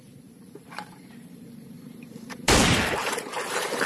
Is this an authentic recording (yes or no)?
no